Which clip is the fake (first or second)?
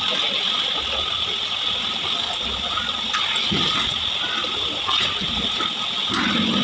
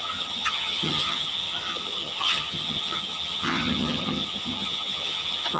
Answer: second